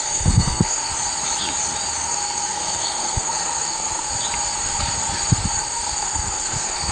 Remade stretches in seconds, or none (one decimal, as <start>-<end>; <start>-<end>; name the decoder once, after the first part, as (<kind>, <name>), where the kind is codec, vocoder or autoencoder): 0.0-0.9 (codec, SNAC); 2.1-4.1; 5.6-6.9

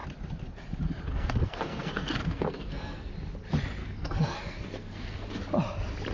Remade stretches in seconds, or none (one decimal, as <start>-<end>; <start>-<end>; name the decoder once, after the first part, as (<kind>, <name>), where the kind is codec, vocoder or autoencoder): 1.1-3.1 (codec, SNAC); 3.8-5.4

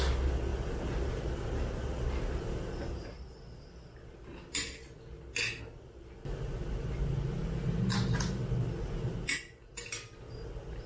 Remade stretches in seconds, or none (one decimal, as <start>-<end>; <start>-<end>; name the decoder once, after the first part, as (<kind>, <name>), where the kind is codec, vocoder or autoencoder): none

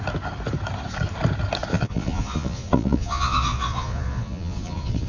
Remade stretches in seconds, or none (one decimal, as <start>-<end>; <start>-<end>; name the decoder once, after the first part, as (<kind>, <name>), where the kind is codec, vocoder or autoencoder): 1.7-5.1 (vocoder, Vocos)